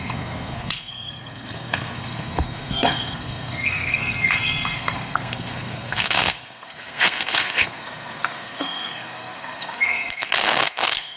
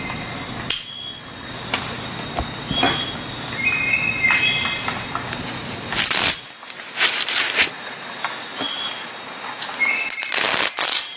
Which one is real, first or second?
second